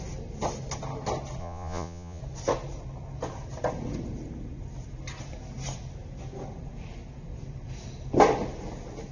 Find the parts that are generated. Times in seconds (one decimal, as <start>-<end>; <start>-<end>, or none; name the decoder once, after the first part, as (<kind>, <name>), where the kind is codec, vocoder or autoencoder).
1.4-2.2 (vocoder, Vocos)